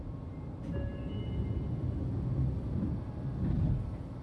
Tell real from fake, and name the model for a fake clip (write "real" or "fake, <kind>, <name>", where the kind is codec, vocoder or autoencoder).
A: real